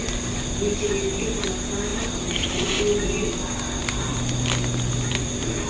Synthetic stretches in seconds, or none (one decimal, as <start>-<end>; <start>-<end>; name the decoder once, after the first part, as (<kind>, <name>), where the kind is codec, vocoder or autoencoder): 1.9-2.8 (vocoder, BigVGAN v2)